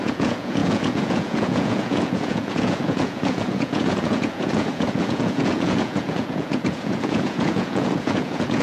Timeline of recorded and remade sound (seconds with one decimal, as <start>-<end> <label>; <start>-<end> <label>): 0.0-8.6 remade